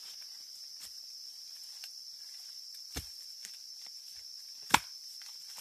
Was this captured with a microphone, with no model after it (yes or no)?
yes